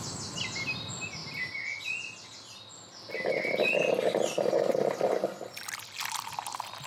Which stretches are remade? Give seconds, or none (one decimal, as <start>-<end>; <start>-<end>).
none